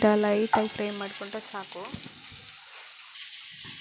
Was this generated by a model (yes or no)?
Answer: no